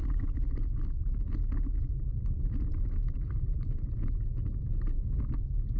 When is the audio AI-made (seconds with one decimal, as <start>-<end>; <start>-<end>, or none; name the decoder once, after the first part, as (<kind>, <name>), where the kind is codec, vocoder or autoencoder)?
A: 1.9-5.8 (vocoder, BigVGAN v2)